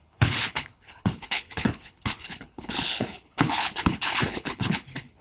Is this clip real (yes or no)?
no